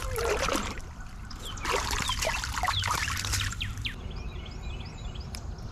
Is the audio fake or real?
real